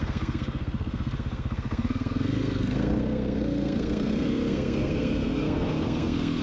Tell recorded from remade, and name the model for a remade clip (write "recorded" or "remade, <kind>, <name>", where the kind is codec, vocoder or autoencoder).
remade, codec, SNAC